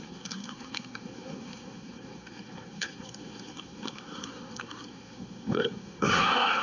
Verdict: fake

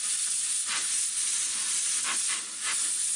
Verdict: real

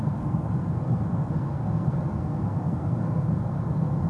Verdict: fake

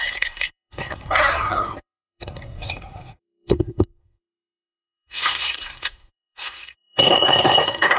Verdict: fake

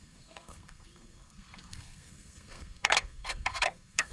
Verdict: fake